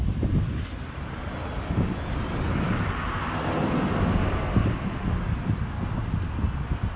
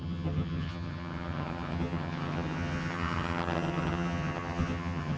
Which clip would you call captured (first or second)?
first